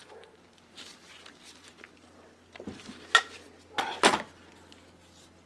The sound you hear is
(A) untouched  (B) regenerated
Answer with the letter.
A